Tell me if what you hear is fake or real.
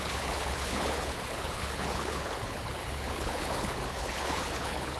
fake